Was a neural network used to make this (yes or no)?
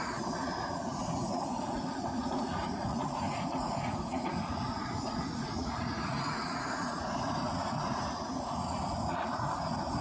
yes